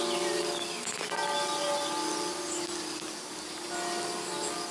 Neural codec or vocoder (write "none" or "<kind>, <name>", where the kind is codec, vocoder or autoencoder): vocoder, BigVGAN v2